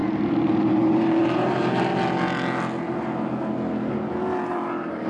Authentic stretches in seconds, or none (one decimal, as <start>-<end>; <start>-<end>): 1.9-4.5